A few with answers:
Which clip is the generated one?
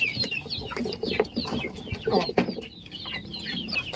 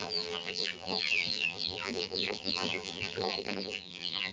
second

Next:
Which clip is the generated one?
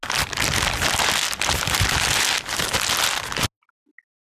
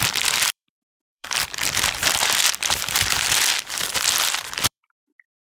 second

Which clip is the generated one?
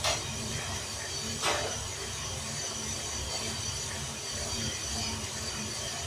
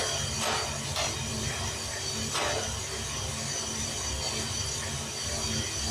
first